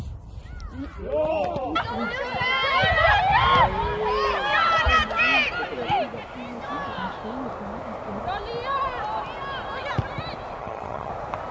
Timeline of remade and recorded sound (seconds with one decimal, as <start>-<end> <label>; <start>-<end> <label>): 0.0-10.6 recorded; 10.6-11.1 remade; 11.1-11.5 recorded